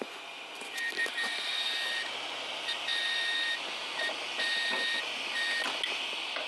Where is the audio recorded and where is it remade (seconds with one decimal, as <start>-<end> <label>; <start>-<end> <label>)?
0.0-6.5 recorded